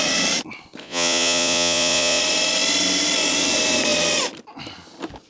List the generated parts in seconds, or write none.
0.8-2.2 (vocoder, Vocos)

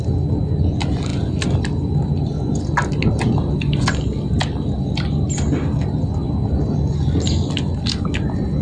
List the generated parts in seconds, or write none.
none

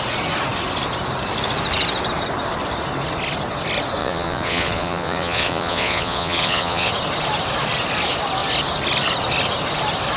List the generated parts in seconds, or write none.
4.0-6.9 (vocoder, Vocos)

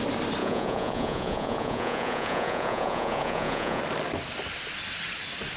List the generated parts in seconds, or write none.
0.4-3.8 (vocoder, Vocos)